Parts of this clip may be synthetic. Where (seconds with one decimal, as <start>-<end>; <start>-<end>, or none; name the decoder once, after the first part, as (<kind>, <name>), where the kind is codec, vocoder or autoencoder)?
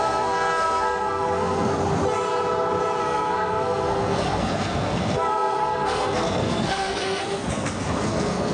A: 0.0-1.8 (codec, SNAC); 3.0-8.5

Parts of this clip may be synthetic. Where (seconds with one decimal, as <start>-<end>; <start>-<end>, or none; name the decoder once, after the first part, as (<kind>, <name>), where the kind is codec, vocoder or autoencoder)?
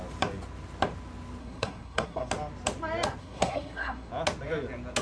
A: 1.4-2.3 (codec, SNAC); 3.2-4.1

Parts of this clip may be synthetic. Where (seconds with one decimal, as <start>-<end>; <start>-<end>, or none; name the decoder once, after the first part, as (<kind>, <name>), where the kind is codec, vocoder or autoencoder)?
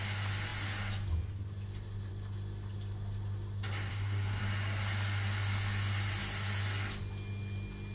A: 3.9-4.4 (codec, SNAC)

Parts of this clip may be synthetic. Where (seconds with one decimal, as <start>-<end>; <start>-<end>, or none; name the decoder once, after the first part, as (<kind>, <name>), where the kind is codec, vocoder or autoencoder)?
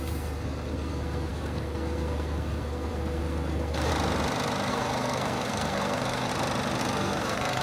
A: 0.0-3.9 (codec, SNAC); 4.7-6.3; 6.8-7.6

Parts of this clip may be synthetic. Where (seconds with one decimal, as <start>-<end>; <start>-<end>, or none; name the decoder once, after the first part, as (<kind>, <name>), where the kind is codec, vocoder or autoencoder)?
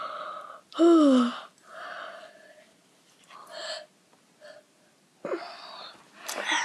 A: none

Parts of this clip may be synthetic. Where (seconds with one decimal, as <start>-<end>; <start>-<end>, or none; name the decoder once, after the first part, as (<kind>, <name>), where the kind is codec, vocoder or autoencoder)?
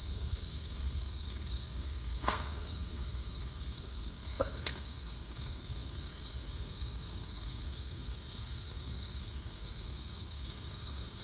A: 0.0-11.2 (codec, SNAC)